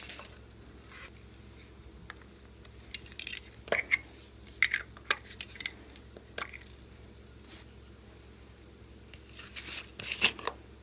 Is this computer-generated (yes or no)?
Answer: no